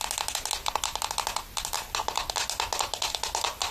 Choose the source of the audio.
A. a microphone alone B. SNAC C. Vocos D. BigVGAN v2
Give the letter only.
A